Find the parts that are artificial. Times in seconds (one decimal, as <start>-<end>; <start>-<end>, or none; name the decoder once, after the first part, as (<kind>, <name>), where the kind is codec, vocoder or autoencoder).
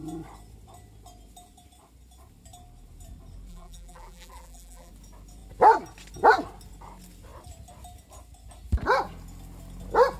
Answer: 3.5-4.9 (vocoder, BigVGAN v2)